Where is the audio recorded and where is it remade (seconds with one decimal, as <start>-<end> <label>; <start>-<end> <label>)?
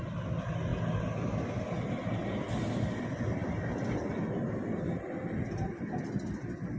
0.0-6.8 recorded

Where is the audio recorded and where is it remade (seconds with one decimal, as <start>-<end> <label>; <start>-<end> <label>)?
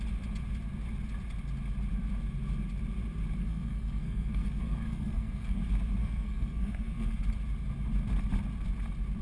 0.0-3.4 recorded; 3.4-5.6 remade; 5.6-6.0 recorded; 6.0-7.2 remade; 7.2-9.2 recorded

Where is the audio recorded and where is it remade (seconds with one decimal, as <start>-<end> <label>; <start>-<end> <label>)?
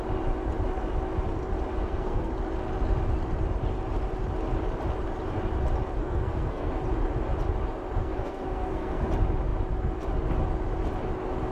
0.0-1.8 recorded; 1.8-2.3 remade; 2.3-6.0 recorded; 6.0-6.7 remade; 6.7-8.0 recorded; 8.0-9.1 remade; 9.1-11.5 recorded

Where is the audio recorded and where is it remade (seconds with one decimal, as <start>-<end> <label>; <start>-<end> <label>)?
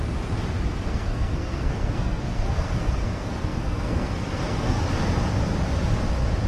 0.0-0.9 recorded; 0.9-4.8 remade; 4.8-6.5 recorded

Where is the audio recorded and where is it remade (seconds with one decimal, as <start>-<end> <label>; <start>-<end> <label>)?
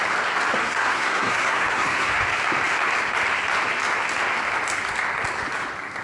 0.0-0.6 recorded; 0.6-2.2 remade; 2.2-6.0 recorded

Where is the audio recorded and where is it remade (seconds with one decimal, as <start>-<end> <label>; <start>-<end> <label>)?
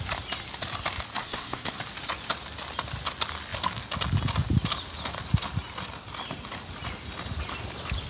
0.0-1.2 recorded; 1.2-1.8 remade; 1.8-8.1 recorded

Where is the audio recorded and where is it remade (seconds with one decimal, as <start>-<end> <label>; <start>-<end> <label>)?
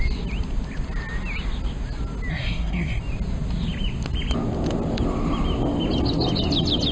0.0-2.3 recorded; 2.3-3.0 remade; 3.0-6.9 recorded